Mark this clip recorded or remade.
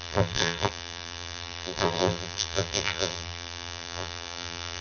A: remade